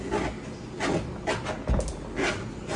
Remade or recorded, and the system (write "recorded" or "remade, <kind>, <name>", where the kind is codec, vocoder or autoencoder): recorded